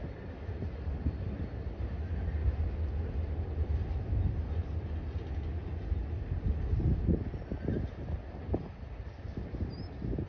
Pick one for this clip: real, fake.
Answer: real